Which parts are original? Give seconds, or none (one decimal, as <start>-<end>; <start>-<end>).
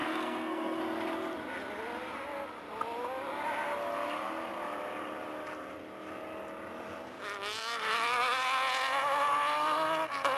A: 0.8-10.4